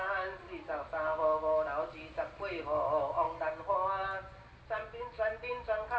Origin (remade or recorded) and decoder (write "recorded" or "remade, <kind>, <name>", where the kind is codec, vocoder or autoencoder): recorded